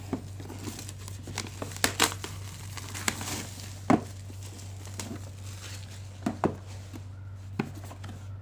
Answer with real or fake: real